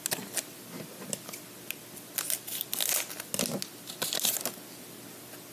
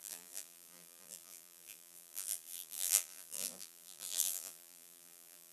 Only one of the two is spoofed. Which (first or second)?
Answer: second